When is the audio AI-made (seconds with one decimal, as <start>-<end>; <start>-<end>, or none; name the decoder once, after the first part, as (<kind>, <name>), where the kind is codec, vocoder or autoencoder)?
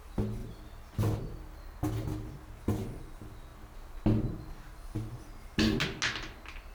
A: 4.7-5.5 (vocoder, BigVGAN v2)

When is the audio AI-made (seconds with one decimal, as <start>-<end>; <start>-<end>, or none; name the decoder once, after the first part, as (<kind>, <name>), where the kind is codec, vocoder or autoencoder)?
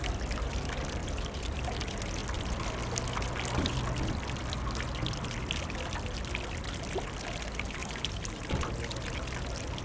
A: 1.0-1.6 (vocoder, BigVGAN v2); 7.8-8.7